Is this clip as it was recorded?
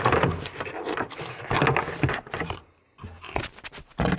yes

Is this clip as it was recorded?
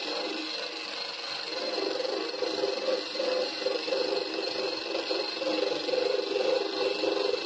no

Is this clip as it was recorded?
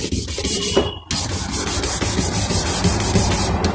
yes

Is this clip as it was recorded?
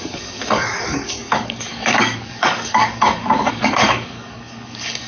no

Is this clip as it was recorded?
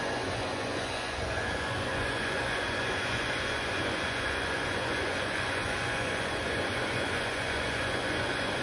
no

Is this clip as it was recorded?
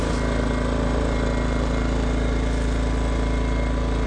yes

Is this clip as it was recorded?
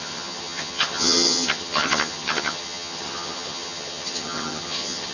no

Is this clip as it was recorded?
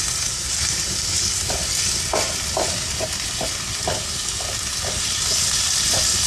yes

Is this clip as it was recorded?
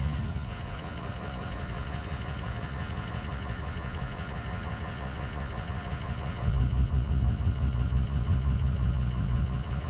no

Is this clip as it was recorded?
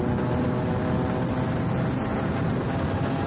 yes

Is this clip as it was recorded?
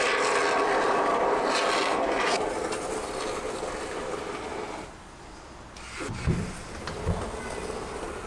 yes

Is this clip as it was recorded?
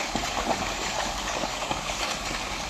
no